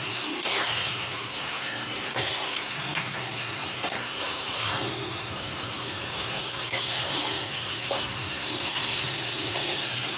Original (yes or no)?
no